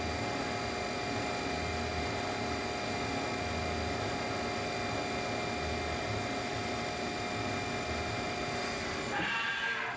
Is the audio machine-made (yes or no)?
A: no